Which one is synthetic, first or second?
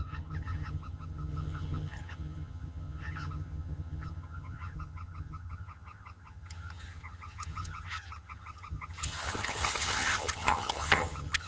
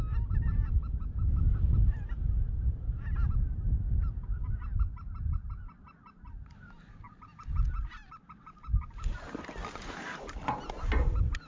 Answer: first